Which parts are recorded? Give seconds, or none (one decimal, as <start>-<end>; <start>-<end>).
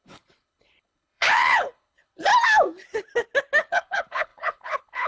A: 2.3-3.7